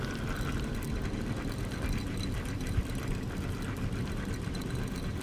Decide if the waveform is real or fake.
real